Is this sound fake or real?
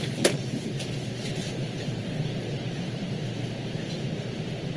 fake